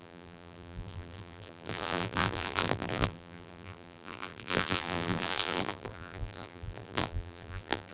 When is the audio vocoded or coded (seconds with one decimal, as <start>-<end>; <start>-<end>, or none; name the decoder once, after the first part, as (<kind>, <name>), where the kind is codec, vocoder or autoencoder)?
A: 0.0-7.9 (vocoder, BigVGAN v2)